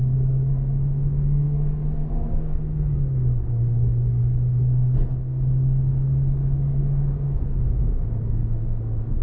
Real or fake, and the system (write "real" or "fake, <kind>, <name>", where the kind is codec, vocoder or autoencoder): fake, codec, SNAC